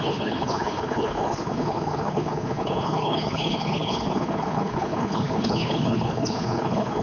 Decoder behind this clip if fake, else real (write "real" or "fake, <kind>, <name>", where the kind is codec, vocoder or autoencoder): fake, codec, HILCodec